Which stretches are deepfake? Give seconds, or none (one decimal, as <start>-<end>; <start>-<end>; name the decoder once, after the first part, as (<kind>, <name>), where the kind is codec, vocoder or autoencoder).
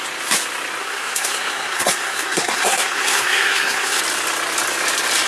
0.8-4.0 (codec, SNAC)